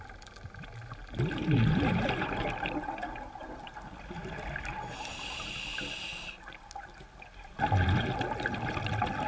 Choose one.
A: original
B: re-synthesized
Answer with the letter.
A